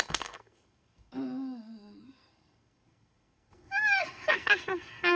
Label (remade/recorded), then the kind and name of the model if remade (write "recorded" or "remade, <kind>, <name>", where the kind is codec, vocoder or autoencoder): remade, codec, SNAC